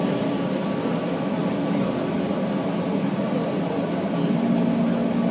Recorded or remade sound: recorded